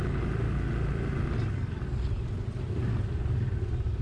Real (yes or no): yes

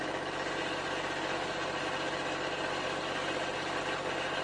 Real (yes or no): yes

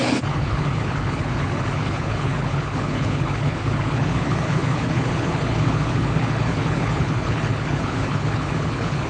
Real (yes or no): no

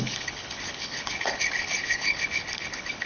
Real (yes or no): no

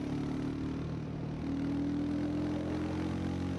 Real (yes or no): yes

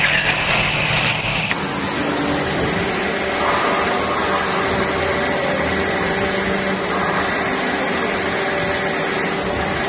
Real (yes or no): yes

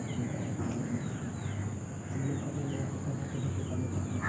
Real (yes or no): yes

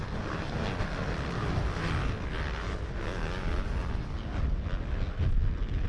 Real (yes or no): yes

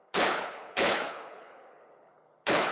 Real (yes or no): no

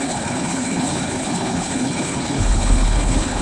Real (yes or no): no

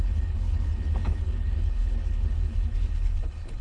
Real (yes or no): no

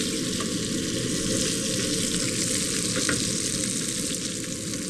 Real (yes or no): yes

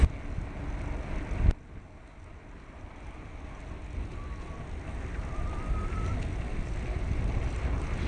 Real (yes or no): yes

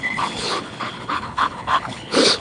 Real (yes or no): no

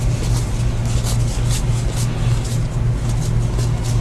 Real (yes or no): yes